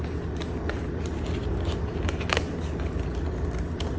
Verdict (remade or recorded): recorded